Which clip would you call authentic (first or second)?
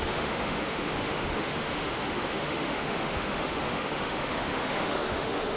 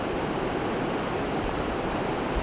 second